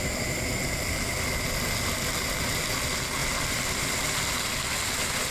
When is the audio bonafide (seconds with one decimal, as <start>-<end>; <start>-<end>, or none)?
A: 0.0-3.2; 4.5-5.3